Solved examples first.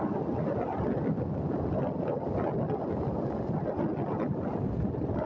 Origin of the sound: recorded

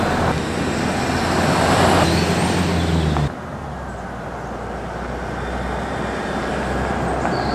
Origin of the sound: recorded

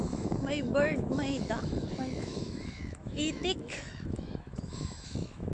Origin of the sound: remade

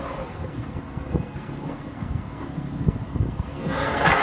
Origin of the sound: remade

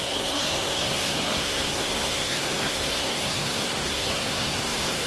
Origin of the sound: remade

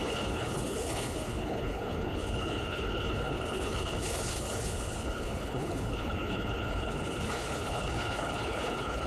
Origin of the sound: remade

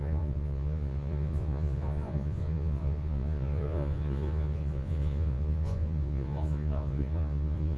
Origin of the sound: remade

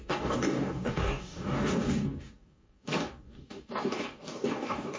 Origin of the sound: remade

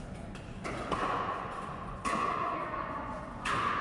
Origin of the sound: remade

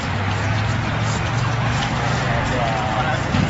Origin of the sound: recorded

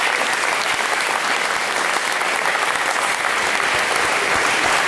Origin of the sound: recorded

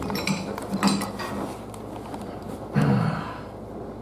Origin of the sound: recorded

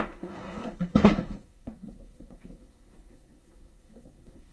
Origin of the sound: remade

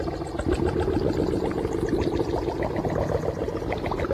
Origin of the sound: recorded